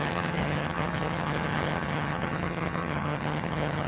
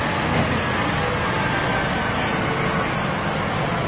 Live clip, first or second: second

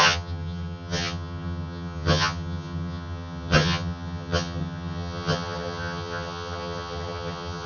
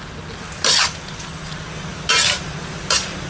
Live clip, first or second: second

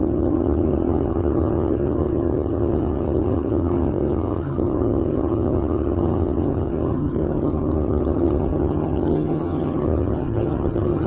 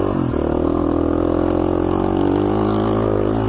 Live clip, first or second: second